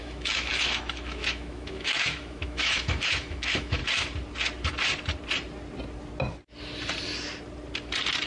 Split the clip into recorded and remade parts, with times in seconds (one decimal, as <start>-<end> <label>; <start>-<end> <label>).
0.0-3.8 remade; 3.8-8.3 recorded